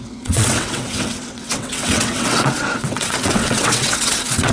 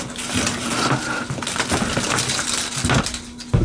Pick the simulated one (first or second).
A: first